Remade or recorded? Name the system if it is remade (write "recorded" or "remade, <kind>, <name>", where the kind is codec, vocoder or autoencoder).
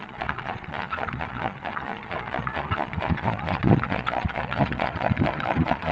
remade, vocoder, Vocos